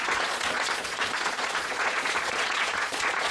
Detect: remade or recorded remade